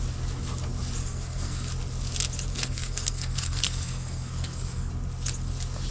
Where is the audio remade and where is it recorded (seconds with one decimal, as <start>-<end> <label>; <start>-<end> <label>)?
0.0-1.0 recorded; 1.0-1.7 remade; 1.7-2.5 recorded; 2.5-4.9 remade; 4.9-5.9 recorded